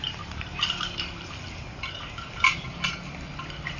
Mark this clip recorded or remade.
recorded